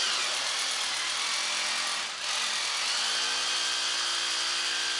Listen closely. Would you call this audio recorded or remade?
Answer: recorded